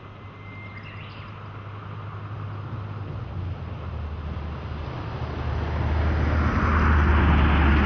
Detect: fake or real real